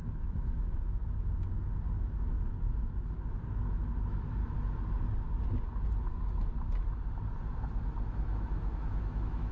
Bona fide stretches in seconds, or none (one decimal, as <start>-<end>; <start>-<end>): 4.4-8.1